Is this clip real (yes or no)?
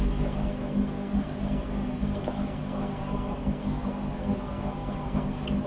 no